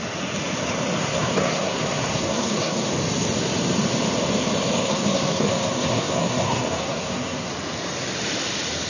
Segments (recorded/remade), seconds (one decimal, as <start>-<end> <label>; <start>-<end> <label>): 0.0-1.0 recorded; 1.0-2.9 remade; 2.9-4.8 recorded; 4.8-7.5 remade; 7.5-8.9 recorded